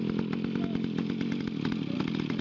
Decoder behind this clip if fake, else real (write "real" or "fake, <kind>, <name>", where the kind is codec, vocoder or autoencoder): real